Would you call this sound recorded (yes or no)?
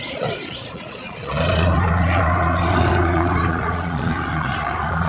no